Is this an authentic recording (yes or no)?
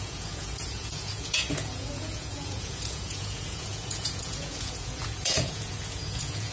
no